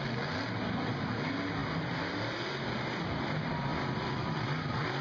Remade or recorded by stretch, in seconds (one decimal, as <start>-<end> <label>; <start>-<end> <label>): 0.0-5.0 recorded